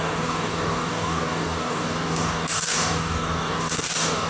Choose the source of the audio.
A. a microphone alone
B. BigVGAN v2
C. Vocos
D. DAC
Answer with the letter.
D